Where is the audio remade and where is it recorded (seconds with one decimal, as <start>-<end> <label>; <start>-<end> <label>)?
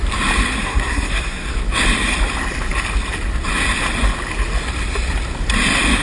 0.0-0.6 recorded; 0.6-1.5 remade; 1.5-6.0 recorded